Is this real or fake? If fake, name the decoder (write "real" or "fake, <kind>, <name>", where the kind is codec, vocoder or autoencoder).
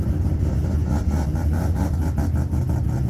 real